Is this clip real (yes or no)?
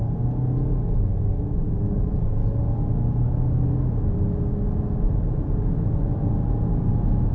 yes